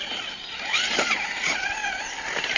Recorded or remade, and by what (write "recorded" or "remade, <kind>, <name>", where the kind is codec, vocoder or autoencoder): recorded